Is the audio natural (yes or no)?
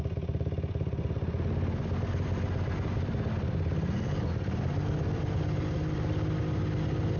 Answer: yes